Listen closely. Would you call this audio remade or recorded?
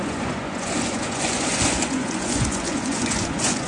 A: remade